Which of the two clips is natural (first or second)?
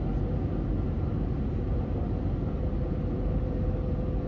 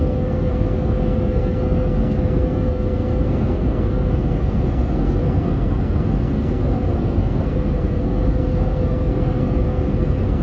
first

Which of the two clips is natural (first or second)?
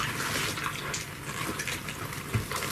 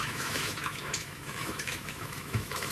first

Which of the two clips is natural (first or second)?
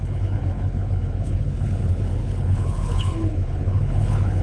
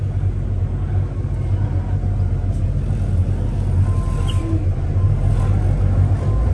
second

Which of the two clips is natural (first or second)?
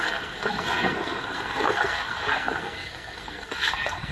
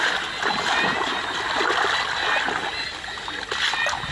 second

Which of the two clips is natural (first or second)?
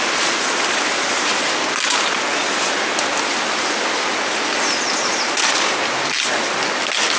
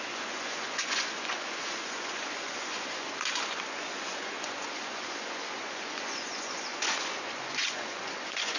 first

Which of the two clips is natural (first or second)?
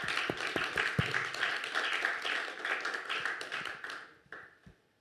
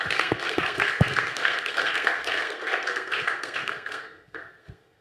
first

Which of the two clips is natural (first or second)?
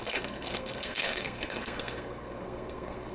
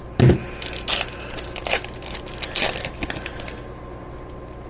second